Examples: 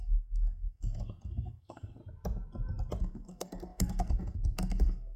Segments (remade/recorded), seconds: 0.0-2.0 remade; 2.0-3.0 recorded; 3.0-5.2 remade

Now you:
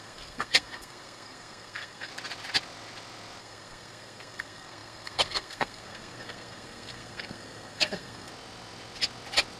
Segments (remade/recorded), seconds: 0.0-2.1 remade; 2.1-3.4 recorded; 3.4-8.3 remade; 8.3-9.6 recorded

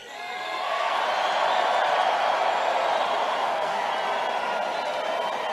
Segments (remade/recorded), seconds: 0.0-1.0 remade; 1.0-3.4 recorded; 3.4-3.9 remade; 3.9-5.5 recorded

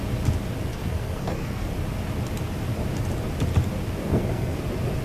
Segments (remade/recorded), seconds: 0.0-0.7 recorded; 0.7-1.7 remade; 1.7-4.0 recorded; 4.0-4.6 remade; 4.6-5.0 recorded